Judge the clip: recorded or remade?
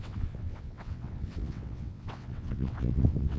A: remade